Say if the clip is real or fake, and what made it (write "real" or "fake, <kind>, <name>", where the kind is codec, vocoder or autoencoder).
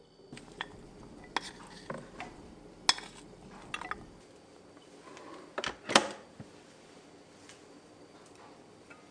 real